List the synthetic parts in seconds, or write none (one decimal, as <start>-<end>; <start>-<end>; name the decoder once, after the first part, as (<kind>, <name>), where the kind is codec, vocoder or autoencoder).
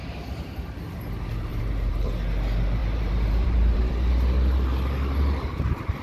0.0-0.6 (vocoder, BigVGAN v2); 1.5-2.1; 2.8-4.1